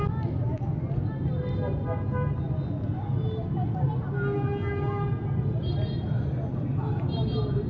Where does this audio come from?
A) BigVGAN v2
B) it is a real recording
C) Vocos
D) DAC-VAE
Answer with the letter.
B